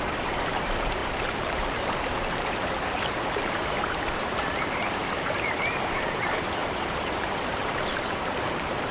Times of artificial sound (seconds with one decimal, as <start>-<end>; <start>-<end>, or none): 0.0-8.9

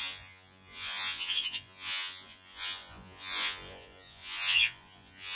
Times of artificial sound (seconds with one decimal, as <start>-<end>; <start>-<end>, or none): 0.0-5.4

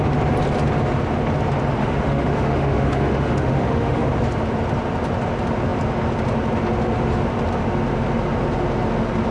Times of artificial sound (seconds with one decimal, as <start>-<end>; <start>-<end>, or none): 1.8-4.1